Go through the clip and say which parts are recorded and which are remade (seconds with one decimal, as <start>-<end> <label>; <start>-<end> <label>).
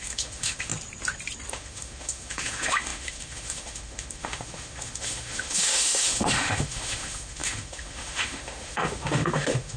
0.0-0.7 remade; 0.7-1.5 recorded; 1.5-9.8 remade